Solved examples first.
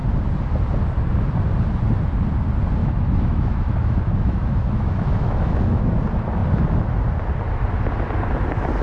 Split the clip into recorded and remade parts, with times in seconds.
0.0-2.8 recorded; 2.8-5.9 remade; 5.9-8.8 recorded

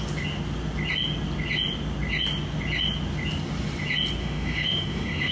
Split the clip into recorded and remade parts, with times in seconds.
0.0-4.2 recorded; 4.2-5.3 remade

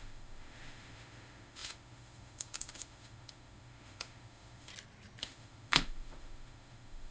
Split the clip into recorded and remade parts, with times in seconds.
0.0-4.7 remade; 4.7-5.2 recorded; 5.2-7.1 remade

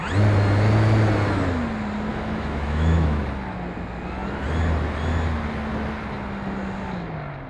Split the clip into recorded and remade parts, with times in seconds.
0.0-2.1 recorded; 2.1-3.2 remade; 3.2-7.5 recorded

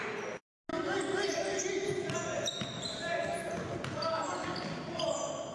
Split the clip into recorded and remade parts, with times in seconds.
0.0-5.5 recorded

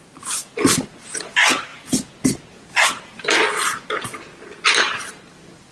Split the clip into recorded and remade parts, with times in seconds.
0.0-5.7 recorded

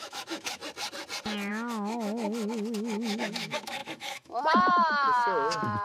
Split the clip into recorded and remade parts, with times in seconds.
0.0-0.6 remade; 0.6-1.5 recorded; 1.5-5.8 remade